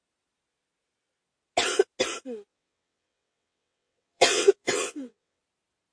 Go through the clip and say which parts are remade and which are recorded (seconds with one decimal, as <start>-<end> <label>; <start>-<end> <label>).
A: 0.0-2.5 recorded; 2.5-5.4 remade; 5.4-5.9 recorded